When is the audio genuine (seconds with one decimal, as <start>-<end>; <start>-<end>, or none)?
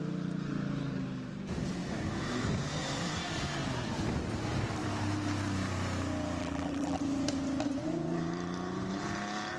0.0-6.4; 7.0-9.6